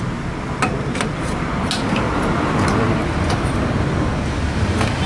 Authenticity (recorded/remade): recorded